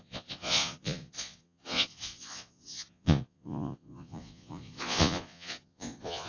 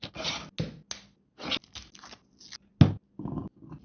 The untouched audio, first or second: second